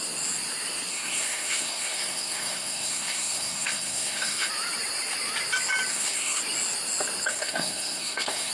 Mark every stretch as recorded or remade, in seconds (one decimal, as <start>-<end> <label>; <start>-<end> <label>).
0.0-0.9 recorded; 0.9-4.5 remade; 4.5-5.9 recorded; 5.9-6.4 remade; 6.4-7.3 recorded; 7.3-8.5 remade